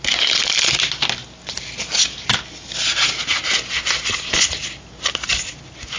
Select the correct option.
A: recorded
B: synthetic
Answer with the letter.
A